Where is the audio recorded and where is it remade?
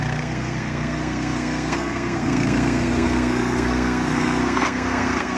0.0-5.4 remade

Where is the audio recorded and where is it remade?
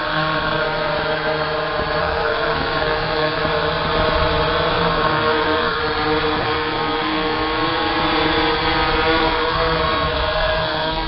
0.0-0.9 remade; 0.9-2.0 recorded; 2.0-3.4 remade; 3.4-4.7 recorded; 4.7-5.8 remade; 5.8-6.4 recorded; 6.4-7.9 remade; 7.9-9.2 recorded; 9.2-11.1 remade